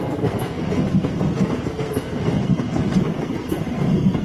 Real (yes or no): no